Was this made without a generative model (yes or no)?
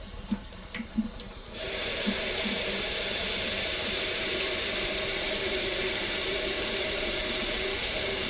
no